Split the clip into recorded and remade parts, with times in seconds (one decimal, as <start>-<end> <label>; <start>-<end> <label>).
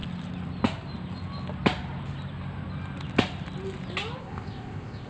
0.0-4.2 recorded; 4.2-5.1 remade